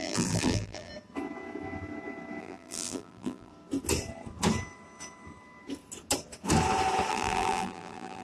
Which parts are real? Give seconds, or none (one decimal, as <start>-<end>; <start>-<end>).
0.9-2.4; 3.5-7.1